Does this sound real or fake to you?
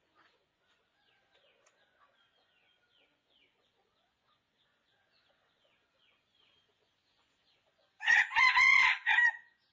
fake